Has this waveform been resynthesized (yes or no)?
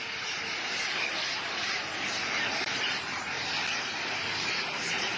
yes